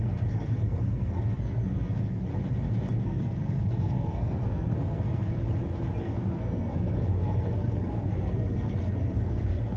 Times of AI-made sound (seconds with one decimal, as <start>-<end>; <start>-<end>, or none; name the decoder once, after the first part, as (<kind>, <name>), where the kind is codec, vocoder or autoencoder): 0.0-2.3 (codec, SNAC); 3.0-5.4; 6.0-9.8

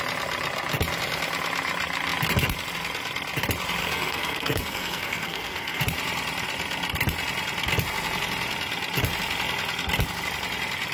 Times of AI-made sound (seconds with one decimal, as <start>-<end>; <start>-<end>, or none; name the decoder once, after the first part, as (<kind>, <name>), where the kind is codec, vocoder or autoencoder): 3.8-5.8 (codec, SNAC)

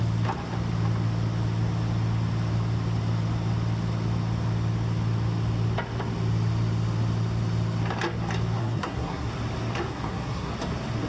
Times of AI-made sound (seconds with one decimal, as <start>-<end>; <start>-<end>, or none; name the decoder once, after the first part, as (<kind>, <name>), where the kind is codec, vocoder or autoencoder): 8.6-9.3 (codec, SNAC); 9.9-10.5

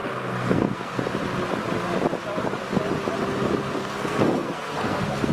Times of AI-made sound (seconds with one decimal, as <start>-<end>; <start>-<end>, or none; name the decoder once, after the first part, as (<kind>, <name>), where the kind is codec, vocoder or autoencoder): 0.0-1.0 (codec, SNAC); 3.8-5.3